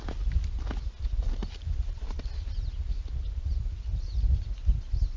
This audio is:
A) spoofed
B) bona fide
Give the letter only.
B